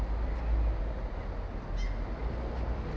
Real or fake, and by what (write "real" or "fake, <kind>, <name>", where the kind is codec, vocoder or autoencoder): real